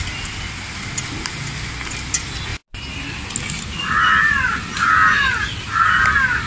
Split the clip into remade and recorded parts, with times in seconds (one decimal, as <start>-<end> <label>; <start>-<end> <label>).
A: 0.0-6.5 recorded